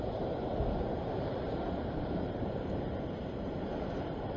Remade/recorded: remade